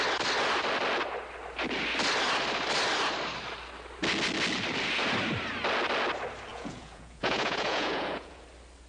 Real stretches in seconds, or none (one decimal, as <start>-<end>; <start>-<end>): 0.0-6.5; 8.4-8.9